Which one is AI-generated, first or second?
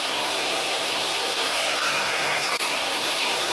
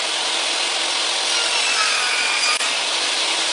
first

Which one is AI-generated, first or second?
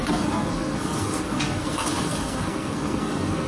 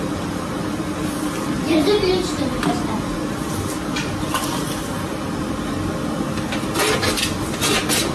first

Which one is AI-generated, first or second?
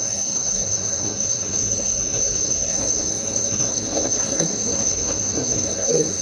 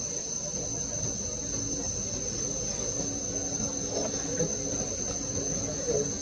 first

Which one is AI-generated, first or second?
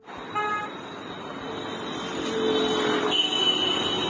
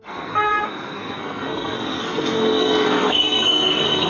second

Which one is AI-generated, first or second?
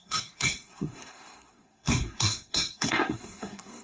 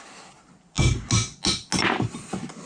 first